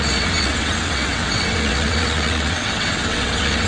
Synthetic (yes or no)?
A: yes